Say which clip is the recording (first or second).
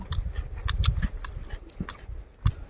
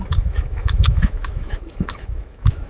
first